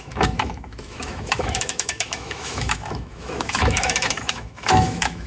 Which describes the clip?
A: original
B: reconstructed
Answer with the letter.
B